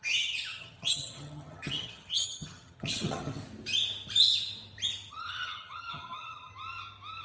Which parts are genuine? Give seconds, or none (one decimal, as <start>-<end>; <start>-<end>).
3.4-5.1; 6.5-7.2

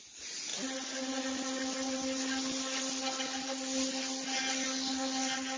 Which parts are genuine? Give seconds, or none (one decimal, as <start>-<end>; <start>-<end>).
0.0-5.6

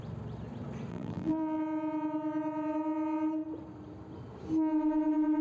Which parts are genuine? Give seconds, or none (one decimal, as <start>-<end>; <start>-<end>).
0.0-0.9; 1.6-5.4